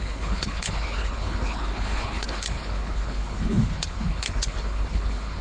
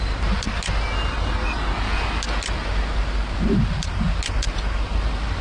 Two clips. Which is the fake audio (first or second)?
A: first